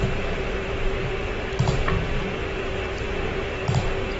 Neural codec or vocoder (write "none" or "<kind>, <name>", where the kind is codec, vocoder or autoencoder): none